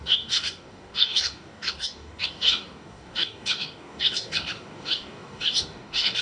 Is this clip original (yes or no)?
no